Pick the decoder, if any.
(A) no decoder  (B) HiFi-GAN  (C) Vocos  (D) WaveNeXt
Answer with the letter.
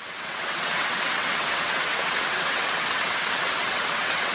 D